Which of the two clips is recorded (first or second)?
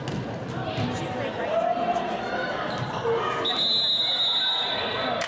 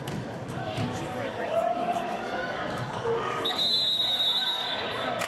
first